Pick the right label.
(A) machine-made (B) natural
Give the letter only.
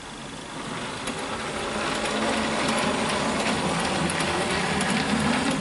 B